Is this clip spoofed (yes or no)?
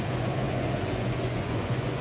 yes